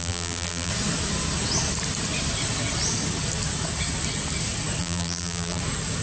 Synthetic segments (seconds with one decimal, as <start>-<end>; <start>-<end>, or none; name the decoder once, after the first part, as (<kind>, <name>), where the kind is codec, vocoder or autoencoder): 0.0-0.7 (vocoder, BigVGAN v2); 4.8-5.6